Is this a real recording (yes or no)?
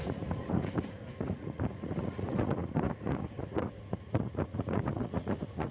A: no